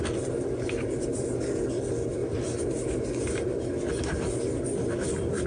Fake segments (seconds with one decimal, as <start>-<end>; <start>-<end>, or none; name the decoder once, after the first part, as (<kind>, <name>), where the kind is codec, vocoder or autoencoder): none